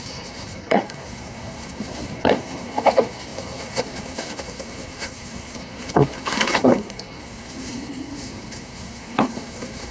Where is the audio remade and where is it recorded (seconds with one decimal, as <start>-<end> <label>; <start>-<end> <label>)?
0.0-9.9 remade